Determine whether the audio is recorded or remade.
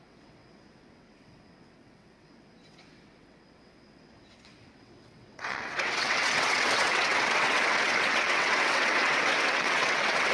remade